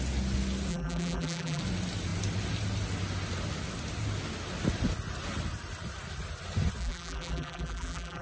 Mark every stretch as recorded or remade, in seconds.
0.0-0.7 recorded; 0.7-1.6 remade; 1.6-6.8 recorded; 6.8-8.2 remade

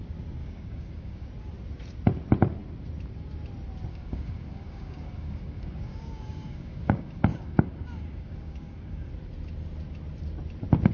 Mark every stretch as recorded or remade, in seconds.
0.0-0.4 recorded; 0.4-1.3 remade; 1.3-3.9 recorded; 3.9-9.1 remade; 9.1-10.9 recorded